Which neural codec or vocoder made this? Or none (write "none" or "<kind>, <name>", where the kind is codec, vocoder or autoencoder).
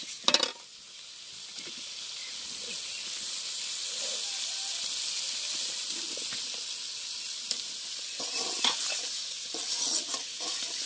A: none